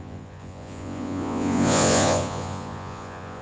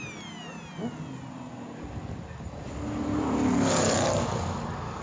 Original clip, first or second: second